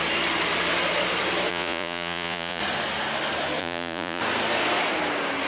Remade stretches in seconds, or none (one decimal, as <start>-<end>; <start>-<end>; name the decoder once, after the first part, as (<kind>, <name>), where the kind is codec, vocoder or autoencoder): 1.5-2.6 (vocoder, Vocos); 3.6-4.2